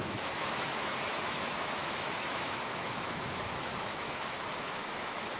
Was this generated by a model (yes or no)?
yes